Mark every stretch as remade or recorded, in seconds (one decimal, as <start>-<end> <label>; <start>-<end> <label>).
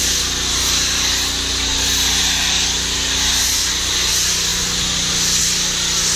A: 0.0-6.2 recorded